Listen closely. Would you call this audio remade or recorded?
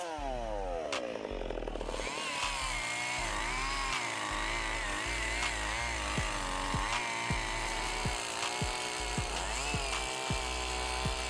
recorded